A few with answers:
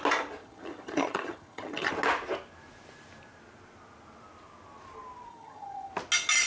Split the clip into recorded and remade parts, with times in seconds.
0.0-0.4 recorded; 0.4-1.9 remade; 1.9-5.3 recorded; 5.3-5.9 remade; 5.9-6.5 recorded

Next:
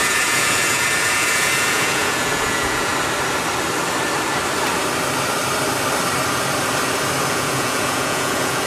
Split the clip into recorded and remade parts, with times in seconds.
0.0-2.9 remade; 2.9-7.3 recorded; 7.3-8.7 remade

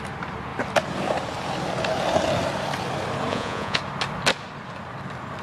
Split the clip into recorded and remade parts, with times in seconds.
0.0-3.3 recorded; 3.3-3.8 remade; 3.8-5.4 recorded

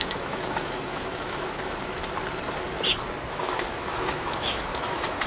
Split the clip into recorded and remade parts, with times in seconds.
0.0-2.0 remade; 2.0-3.3 recorded; 3.3-5.3 remade